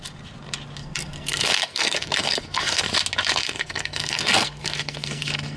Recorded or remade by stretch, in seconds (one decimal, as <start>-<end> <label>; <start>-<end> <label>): 0.0-0.8 recorded; 0.8-2.8 remade; 2.8-3.4 recorded; 3.4-5.6 remade

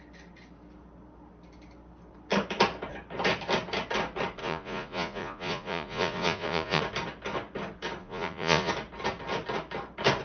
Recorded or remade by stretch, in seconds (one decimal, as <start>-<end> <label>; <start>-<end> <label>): 0.0-4.4 recorded; 4.4-6.8 remade; 6.8-8.0 recorded; 8.0-8.7 remade; 8.7-10.2 recorded